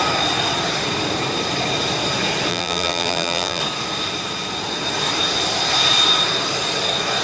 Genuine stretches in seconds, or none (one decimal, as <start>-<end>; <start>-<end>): 0.0-2.5; 3.6-7.2